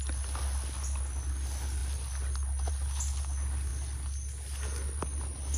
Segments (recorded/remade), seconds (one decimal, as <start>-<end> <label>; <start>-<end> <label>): 0.0-5.6 recorded